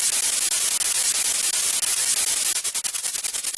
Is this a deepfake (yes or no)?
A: no